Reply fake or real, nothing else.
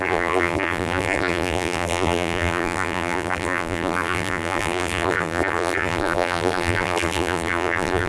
fake